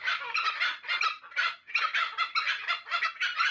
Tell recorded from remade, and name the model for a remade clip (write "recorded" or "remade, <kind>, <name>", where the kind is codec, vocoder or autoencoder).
recorded